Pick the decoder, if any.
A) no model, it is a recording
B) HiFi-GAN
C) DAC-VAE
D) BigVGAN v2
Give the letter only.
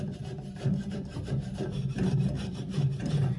D